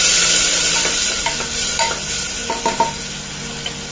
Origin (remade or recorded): recorded